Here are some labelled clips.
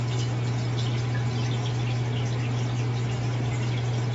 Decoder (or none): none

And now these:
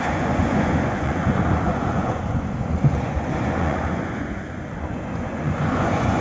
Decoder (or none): vocoder, Vocos